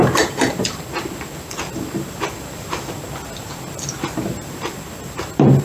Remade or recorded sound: remade